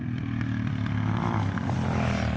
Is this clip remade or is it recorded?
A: recorded